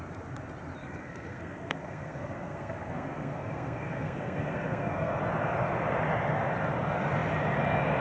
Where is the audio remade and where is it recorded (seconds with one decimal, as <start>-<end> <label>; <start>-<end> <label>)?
0.0-0.8 recorded; 0.8-5.2 remade; 5.2-8.0 recorded